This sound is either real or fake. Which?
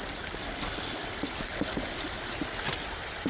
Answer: real